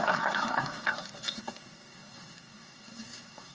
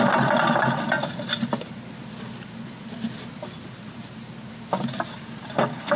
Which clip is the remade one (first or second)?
first